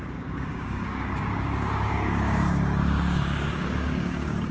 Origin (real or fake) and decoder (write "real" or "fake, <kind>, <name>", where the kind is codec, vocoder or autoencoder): fake, codec, DAC